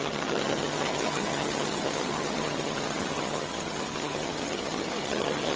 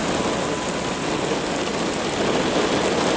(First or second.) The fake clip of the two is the first